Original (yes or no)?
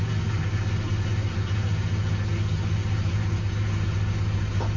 yes